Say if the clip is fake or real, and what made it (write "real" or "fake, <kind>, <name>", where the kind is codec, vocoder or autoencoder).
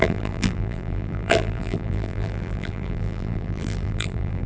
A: fake, vocoder, BigVGAN v2